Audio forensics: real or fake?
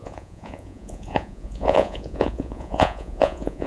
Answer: fake